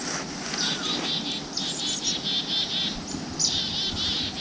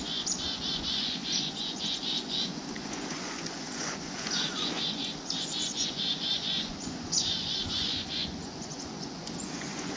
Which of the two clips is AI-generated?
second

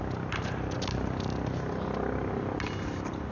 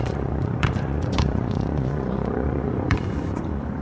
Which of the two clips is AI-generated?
second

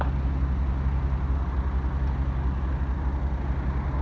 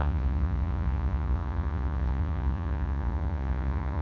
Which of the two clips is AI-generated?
second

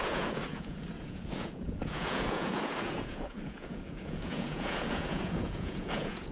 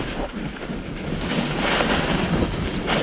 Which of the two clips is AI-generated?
first